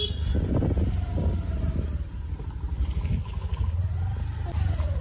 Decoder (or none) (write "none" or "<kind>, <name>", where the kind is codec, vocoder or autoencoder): none